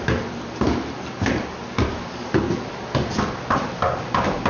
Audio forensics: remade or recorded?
recorded